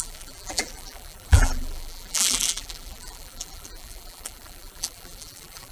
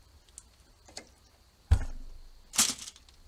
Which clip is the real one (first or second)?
second